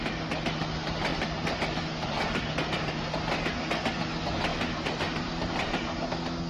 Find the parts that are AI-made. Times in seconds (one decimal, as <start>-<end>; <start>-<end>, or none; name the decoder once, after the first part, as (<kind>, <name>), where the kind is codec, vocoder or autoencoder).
1.1-2.4 (vocoder, BigVGAN v2); 4.5-6.1

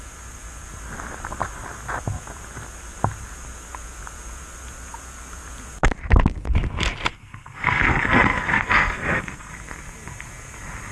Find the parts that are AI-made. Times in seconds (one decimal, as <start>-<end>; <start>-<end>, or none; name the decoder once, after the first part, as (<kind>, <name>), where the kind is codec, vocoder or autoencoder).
7.1-9.5 (codec, SNAC)

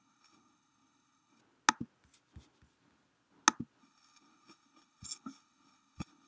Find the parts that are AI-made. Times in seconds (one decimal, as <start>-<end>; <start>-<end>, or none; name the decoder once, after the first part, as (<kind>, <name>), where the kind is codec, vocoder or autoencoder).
0.0-1.4 (codec, HILCodec); 3.8-6.3

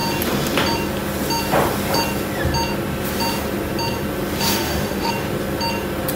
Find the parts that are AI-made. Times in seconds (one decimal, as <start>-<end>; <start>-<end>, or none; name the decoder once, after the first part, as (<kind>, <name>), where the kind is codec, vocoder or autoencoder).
4.5-5.1 (autoencoder, DAC-VAE)

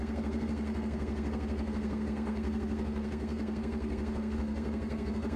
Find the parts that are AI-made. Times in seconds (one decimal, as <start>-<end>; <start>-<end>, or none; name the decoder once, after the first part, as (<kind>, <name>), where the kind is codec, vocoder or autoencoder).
0.0-5.4 (codec, SNAC)

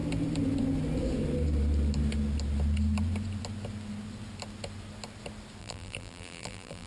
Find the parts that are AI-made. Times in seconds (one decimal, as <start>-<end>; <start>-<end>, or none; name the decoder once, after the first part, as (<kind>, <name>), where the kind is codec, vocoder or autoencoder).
5.6-6.9 (vocoder, BigVGAN v2)